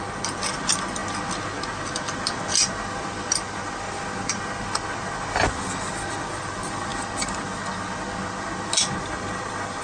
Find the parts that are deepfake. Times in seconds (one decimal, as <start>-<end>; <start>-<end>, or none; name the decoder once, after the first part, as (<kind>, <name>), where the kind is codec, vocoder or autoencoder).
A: none